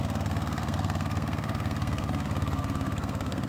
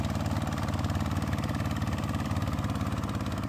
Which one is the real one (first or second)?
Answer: second